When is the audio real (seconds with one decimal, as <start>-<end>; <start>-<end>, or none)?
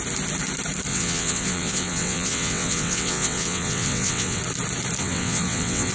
0.0-0.9; 4.4-5.0